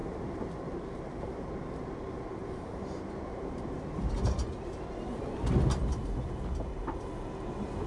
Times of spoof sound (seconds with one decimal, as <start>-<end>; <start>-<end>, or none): 2.4-5.4